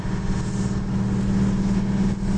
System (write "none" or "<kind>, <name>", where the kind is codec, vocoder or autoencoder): none